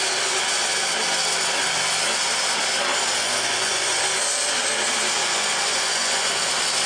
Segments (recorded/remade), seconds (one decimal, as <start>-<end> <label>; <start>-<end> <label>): 0.0-3.2 recorded; 3.2-4.0 remade; 4.0-5.2 recorded; 5.2-6.5 remade; 6.5-6.9 recorded